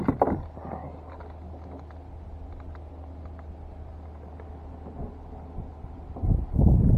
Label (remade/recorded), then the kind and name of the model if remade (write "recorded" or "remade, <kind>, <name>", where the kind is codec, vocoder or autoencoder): recorded